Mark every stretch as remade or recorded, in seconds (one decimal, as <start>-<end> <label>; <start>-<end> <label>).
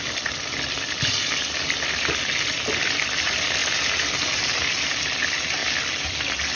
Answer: 0.0-5.6 remade; 5.6-6.6 recorded